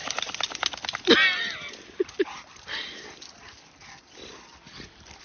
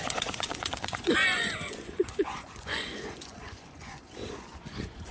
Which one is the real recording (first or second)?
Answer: first